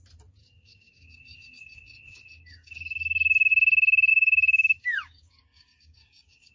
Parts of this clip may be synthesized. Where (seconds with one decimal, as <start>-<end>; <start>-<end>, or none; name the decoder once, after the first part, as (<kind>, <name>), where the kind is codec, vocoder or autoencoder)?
0.4-3.5 (codec, DAC); 4.1-6.5